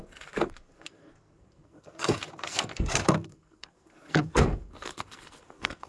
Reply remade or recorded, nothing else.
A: remade